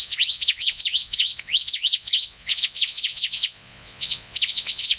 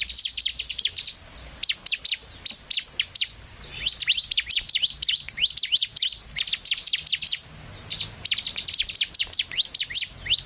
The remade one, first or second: first